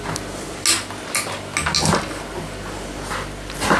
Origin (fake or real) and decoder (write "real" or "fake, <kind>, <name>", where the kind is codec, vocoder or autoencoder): real